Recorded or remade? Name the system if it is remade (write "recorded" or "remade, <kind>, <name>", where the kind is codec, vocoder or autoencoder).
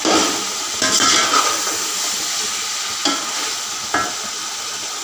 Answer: recorded